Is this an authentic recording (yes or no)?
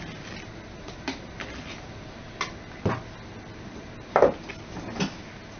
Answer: yes